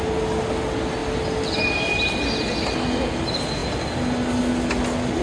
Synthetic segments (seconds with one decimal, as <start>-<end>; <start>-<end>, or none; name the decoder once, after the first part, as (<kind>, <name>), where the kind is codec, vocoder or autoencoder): none